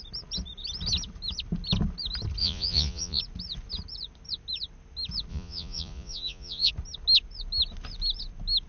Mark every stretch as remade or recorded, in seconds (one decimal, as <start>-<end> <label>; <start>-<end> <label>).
0.0-2.4 recorded; 2.4-3.2 remade; 3.2-5.3 recorded; 5.3-6.7 remade; 6.7-8.7 recorded